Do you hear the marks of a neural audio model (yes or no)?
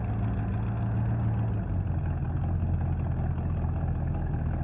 no